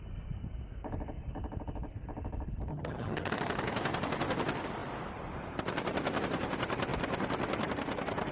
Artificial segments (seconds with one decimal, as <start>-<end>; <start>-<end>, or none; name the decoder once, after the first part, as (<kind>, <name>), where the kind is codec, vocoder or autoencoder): 2.7-3.3 (vocoder, HiFi-GAN)